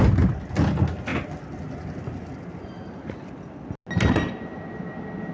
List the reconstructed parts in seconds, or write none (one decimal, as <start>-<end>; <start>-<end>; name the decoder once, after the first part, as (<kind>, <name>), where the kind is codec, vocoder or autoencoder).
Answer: none